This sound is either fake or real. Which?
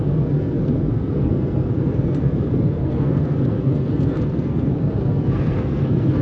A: fake